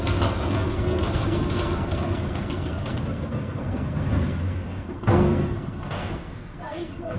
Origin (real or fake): fake